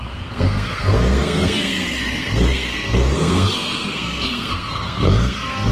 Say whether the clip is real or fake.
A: fake